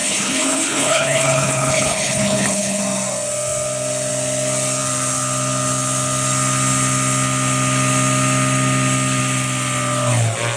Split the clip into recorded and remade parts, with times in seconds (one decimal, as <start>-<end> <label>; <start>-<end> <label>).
0.0-2.8 remade; 2.8-10.6 recorded